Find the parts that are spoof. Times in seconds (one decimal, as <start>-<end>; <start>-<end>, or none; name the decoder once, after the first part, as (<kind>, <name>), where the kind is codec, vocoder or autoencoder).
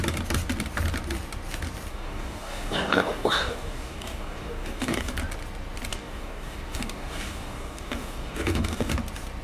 1.9-5.1 (codec, DAC); 5.9-8.9